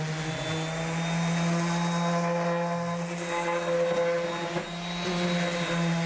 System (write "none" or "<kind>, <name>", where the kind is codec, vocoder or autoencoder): none